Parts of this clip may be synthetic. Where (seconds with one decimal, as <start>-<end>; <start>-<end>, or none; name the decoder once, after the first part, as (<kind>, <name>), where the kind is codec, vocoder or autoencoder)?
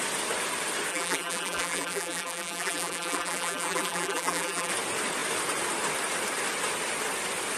0.9-4.7 (vocoder, BigVGAN v2)